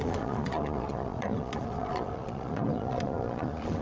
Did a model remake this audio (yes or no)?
yes